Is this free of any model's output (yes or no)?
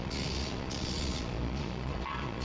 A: no